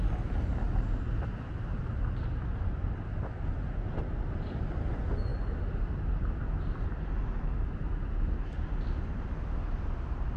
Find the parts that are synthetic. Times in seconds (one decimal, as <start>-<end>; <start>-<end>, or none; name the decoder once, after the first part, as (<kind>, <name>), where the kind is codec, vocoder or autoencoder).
none